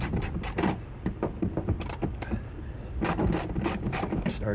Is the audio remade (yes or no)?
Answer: no